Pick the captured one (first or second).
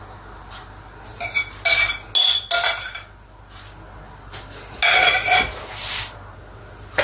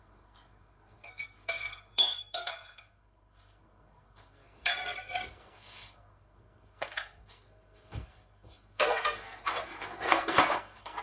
first